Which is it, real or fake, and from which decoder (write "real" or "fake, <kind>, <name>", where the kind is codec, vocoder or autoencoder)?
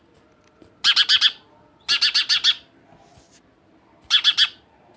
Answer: real